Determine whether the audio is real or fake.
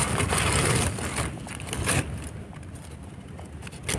real